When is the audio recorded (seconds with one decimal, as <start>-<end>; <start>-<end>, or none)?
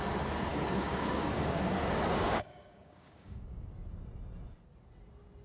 0.0-0.5; 3.7-5.4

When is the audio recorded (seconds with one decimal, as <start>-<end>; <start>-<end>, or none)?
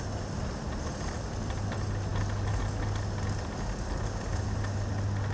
0.0-5.3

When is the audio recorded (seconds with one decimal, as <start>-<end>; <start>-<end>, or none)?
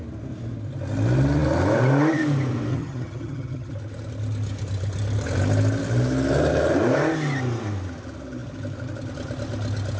0.0-2.7; 3.7-10.0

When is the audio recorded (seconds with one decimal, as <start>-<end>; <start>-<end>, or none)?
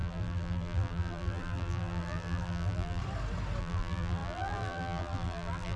3.0-3.6